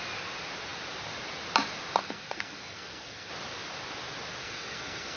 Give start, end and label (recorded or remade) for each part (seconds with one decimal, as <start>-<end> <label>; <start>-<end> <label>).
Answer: 0.0-2.0 recorded; 2.0-3.3 remade; 3.3-4.4 recorded; 4.4-5.2 remade